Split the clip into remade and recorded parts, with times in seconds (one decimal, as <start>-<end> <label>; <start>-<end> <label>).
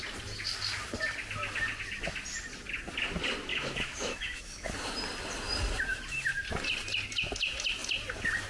0.0-3.5 recorded; 3.5-4.7 remade; 4.7-8.5 recorded